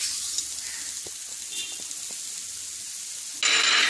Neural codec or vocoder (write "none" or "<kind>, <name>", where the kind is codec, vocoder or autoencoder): none